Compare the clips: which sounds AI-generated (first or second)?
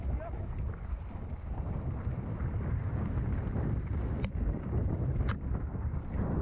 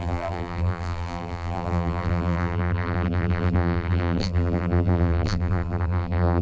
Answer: second